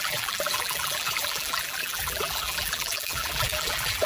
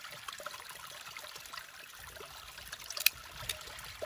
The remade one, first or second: first